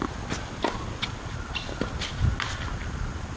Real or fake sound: real